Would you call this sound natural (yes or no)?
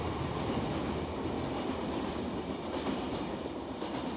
yes